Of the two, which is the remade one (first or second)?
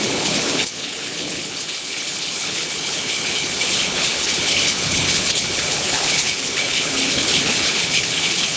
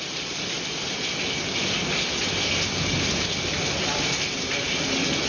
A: first